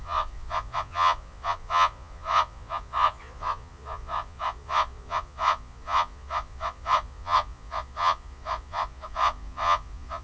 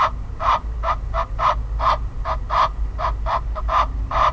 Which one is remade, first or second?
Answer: first